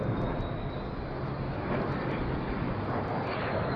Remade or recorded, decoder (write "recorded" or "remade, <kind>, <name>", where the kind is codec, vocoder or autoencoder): recorded